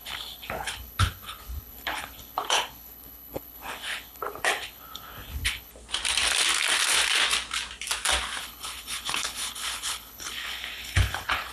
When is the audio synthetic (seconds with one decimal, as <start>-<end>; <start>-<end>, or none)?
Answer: 0.0-5.7; 8.4-11.5